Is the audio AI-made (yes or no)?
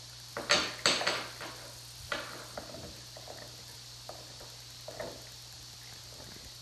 no